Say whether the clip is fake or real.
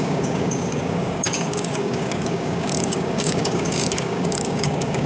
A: fake